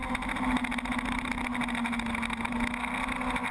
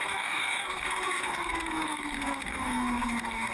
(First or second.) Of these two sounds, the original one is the first